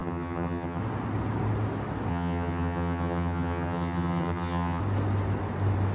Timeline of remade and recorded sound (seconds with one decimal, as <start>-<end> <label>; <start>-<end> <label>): 0.0-0.8 remade; 0.8-2.1 recorded; 2.1-4.8 remade; 4.8-5.9 recorded